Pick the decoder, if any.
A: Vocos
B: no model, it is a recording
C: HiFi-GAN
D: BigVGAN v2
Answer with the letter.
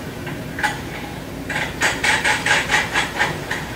D